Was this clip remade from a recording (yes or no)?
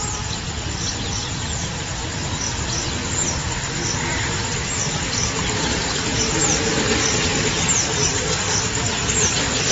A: no